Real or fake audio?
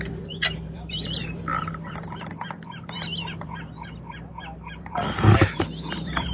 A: fake